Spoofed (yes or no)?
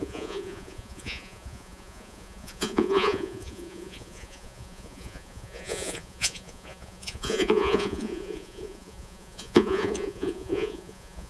yes